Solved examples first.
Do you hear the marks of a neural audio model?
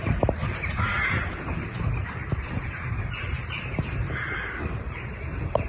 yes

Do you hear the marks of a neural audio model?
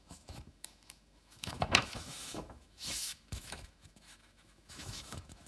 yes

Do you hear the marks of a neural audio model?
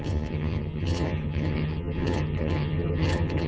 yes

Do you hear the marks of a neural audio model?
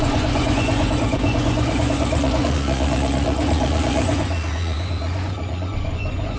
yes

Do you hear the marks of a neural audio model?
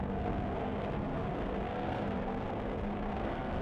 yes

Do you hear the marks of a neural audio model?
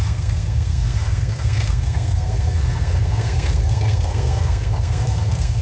yes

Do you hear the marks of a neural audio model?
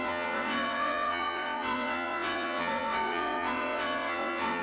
yes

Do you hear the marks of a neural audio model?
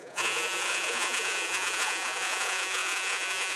yes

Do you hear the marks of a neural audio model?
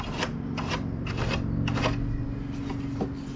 no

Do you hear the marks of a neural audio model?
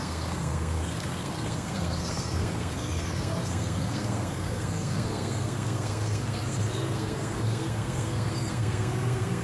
yes